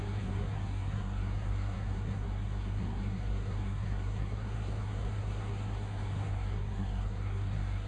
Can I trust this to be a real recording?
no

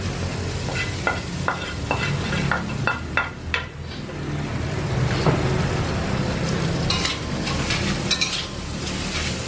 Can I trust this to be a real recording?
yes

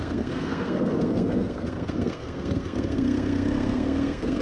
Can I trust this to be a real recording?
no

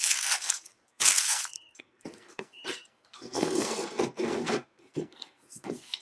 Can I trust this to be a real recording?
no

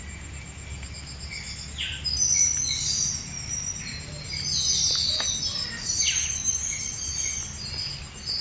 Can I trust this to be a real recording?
yes